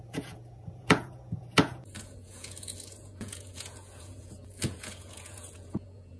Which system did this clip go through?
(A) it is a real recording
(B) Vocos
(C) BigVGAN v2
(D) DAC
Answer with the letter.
B